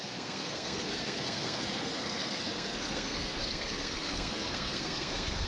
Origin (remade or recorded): remade